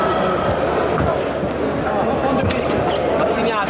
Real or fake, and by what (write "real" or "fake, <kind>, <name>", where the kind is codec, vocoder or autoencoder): real